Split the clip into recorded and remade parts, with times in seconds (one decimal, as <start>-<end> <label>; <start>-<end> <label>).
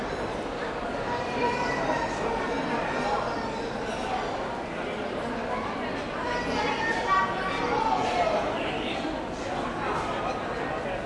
0.0-11.1 recorded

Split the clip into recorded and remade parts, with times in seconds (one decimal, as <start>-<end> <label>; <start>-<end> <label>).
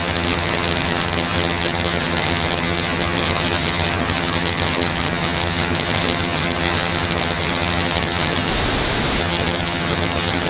0.0-8.5 remade; 8.5-9.2 recorded; 9.2-10.5 remade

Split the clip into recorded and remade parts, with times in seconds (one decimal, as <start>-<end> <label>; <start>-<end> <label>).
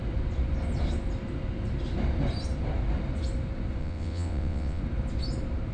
0.0-3.8 recorded; 3.8-4.8 remade; 4.8-5.7 recorded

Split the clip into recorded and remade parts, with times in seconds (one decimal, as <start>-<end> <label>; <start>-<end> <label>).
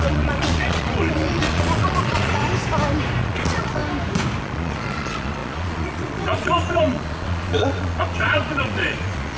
0.0-2.4 remade; 2.4-3.2 recorded; 3.2-3.8 remade; 3.8-4.4 recorded; 4.4-9.4 remade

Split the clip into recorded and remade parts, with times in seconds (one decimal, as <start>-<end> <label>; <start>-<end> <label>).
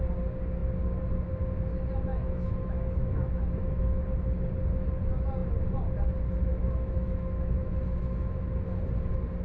0.0-2.1 recorded; 2.1-4.0 remade; 4.0-6.5 recorded; 6.5-8.3 remade; 8.3-9.4 recorded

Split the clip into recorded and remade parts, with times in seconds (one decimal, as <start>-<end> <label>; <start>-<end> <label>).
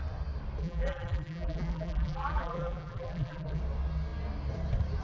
0.0-0.6 recorded; 0.6-3.6 remade; 3.6-5.0 recorded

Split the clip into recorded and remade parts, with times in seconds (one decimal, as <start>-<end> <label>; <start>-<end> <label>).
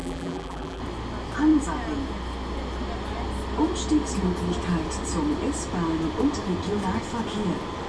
0.0-0.8 remade; 0.8-7.9 recorded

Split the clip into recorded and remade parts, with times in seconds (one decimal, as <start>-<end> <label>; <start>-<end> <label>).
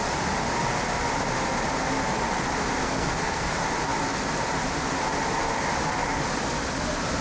0.0-2.8 recorded; 2.8-3.5 remade; 3.5-7.2 recorded